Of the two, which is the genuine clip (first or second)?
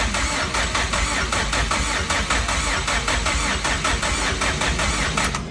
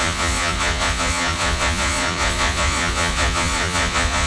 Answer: first